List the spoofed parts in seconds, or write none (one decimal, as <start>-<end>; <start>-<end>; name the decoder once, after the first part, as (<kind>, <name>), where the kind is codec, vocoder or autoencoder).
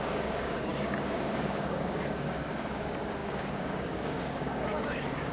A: 0.0-5.3 (codec, DAC)